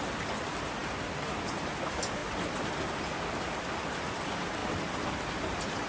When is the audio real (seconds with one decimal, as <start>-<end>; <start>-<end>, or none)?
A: 0.0-5.9